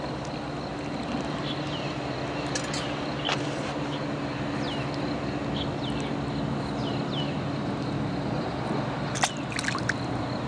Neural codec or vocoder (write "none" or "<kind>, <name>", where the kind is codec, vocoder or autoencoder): none